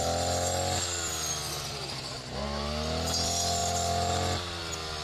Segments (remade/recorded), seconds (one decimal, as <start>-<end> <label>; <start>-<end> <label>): 0.0-5.0 recorded